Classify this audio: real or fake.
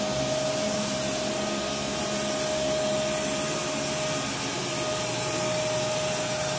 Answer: real